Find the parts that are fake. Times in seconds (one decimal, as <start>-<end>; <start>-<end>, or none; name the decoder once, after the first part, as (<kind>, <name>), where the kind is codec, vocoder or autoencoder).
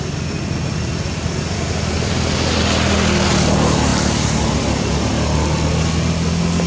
none